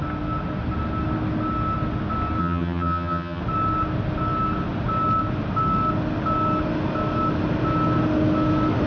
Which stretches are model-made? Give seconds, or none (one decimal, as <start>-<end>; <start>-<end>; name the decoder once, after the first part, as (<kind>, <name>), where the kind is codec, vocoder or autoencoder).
2.4-3.4 (vocoder, HiFi-GAN)